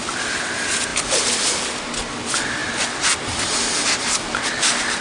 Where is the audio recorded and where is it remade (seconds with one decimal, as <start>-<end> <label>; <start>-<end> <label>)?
0.0-5.0 recorded